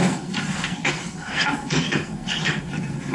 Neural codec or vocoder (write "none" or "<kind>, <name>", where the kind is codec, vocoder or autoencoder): codec, SNAC